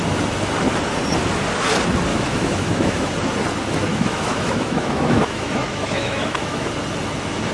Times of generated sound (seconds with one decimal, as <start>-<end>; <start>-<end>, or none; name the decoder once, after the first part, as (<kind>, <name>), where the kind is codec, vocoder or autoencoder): 2.1-3.1 (autoencoder, DAC-VAE); 3.9-6.7